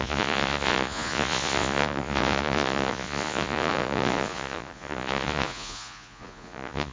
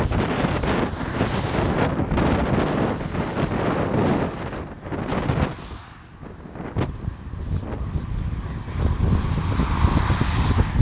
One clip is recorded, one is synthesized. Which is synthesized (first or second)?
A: first